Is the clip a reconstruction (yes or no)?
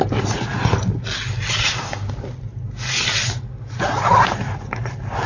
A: no